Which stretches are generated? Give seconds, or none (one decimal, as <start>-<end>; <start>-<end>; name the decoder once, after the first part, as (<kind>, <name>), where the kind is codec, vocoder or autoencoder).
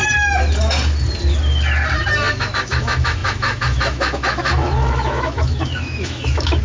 2.3-6.6 (autoencoder, DAC-VAE)